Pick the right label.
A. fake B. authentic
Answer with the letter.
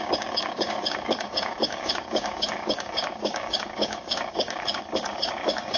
A